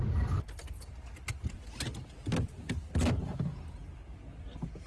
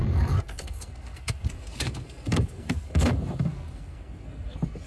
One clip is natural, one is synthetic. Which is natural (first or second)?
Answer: first